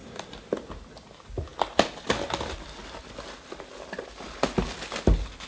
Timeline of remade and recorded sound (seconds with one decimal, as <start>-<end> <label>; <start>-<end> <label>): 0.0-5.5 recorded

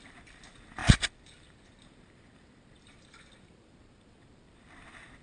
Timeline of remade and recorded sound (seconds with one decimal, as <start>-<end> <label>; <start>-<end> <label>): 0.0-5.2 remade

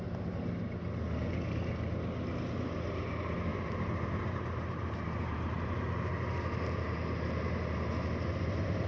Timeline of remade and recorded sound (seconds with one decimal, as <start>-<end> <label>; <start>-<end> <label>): 0.0-3.5 recorded; 3.5-5.8 remade; 5.8-8.9 recorded